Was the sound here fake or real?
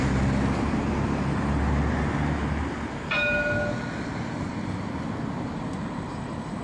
real